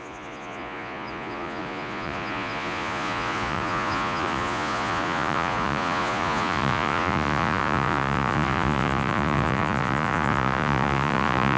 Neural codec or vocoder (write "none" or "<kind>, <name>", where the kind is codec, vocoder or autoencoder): vocoder, Vocos